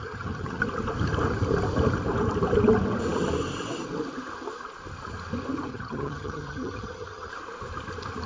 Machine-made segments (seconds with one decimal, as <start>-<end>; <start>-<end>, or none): 0.0-0.6; 5.7-7.3